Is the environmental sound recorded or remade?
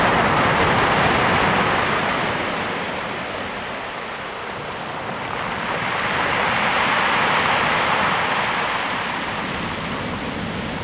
recorded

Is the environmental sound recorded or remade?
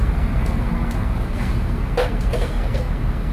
remade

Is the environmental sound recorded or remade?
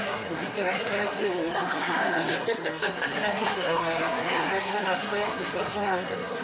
remade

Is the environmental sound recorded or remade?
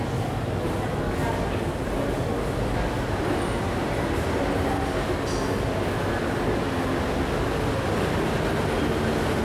recorded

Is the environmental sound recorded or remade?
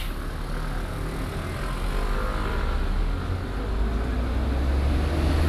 recorded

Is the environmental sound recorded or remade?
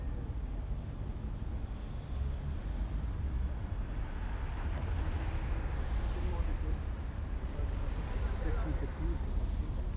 recorded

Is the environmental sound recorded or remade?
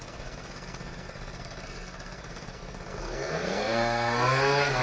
remade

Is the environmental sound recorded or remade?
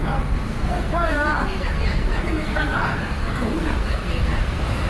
remade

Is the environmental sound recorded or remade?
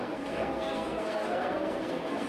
remade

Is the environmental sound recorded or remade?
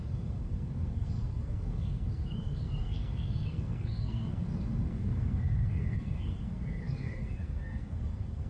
remade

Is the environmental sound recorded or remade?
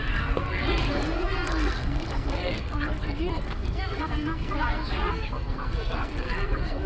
remade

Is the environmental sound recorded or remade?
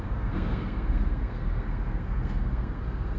remade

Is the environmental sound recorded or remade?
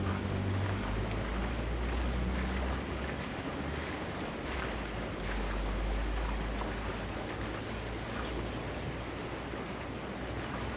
recorded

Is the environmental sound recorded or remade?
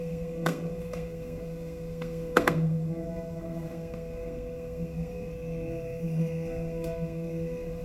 remade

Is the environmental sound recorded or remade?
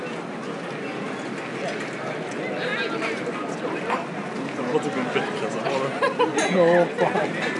recorded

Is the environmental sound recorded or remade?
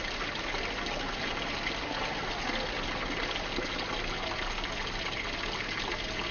recorded